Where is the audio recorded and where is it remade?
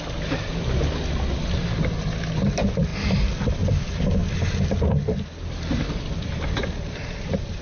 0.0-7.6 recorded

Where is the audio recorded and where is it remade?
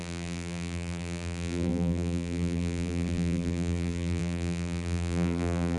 0.0-5.8 remade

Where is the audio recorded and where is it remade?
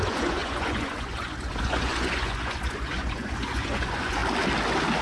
0.0-4.2 remade; 4.2-5.0 recorded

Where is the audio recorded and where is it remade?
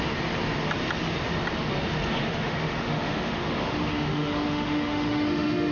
0.0-2.2 recorded; 2.2-5.7 remade